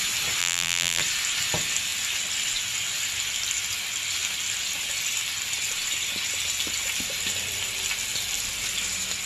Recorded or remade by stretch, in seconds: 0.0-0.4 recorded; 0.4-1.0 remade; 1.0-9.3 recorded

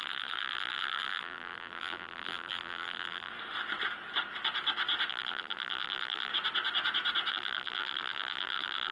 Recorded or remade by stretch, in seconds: 0.0-3.3 remade; 3.3-5.1 recorded; 5.1-6.3 remade; 6.3-7.3 recorded; 7.3-8.9 remade

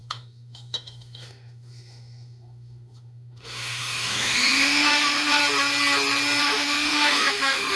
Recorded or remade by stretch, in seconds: 0.0-5.4 remade; 5.4-6.4 recorded; 6.4-7.8 remade

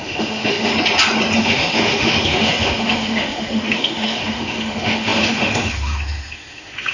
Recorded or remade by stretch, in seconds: 0.0-0.7 remade; 0.7-1.4 recorded; 1.4-6.9 remade

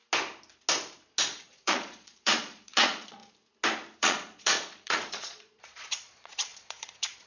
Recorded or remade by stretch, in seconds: 0.0-1.4 recorded; 1.4-3.2 remade; 3.2-4.0 recorded; 4.0-7.3 remade